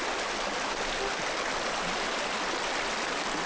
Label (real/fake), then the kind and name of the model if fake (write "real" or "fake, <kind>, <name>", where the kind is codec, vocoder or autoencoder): real